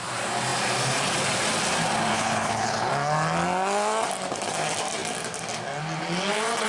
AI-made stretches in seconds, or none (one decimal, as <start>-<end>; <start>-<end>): 2.1-2.9